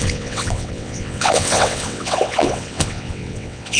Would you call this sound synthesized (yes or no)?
yes